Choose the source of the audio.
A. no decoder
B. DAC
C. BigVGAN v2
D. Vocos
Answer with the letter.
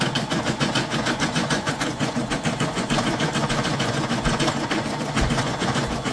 D